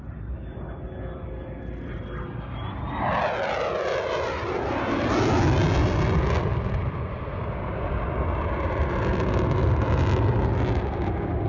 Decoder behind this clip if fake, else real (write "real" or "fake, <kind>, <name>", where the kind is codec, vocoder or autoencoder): real